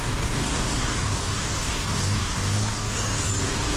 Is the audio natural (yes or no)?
no